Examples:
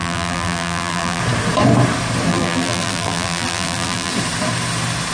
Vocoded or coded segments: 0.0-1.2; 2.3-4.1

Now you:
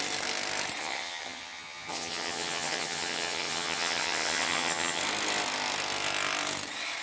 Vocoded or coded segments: 0.8-5.0

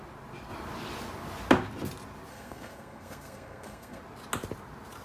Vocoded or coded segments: 2.3-4.0

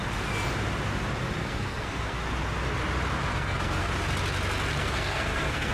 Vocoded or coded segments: 1.4-2.2; 3.3-3.9; 4.7-5.7

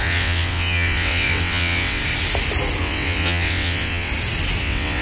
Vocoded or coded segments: 0.0-2.0; 2.8-4.1; 4.6-5.0

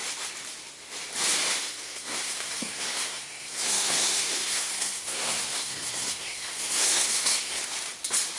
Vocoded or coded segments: 1.6-7.6